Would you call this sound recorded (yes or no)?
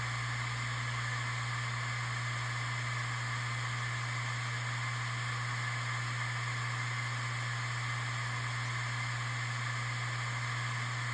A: yes